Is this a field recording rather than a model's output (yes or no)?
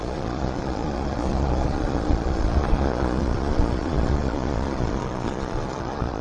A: no